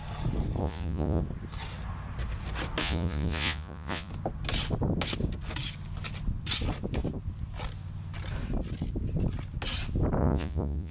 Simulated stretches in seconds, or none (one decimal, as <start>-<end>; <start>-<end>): 0.6-1.2; 2.8-4.1; 10.2-10.9